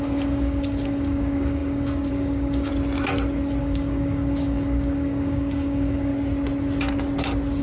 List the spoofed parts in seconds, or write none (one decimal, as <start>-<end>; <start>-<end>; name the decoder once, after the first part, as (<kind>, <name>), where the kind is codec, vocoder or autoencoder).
0.0-2.7 (codec, DAC); 3.6-6.1